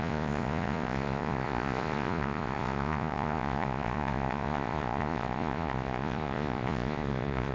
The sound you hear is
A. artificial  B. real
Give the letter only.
A